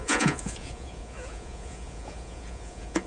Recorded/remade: remade